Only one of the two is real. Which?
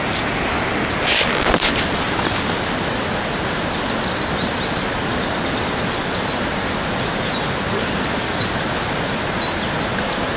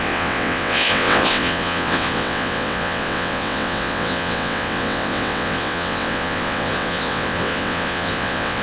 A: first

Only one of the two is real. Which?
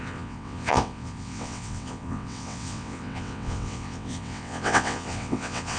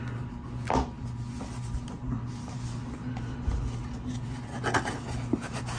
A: second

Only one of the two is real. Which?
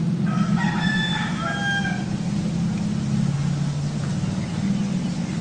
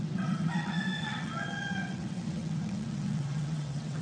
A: first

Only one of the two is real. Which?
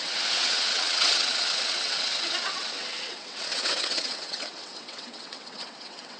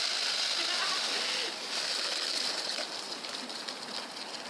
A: second